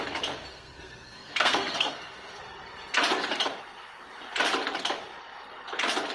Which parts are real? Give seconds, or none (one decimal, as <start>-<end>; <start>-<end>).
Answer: 0.0-0.5; 2.4-6.1